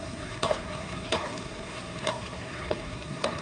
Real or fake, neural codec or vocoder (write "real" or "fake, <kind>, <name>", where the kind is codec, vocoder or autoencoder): fake, codec, SNAC